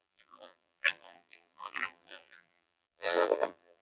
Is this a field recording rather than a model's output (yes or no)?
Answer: no